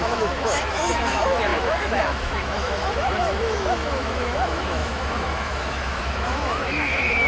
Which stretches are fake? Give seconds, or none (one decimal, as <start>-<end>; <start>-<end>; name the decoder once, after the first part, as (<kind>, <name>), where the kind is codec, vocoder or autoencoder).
0.0-7.3 (autoencoder, DAC-VAE)